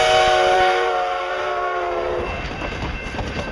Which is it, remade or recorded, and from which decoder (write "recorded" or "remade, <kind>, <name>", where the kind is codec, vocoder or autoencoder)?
recorded